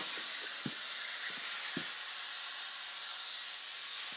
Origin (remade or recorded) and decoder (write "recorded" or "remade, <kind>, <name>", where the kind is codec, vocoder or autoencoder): recorded